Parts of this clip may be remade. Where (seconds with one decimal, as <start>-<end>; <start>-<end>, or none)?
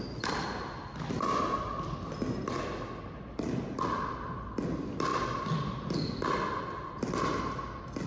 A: none